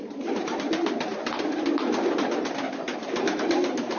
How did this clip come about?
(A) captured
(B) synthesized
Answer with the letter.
A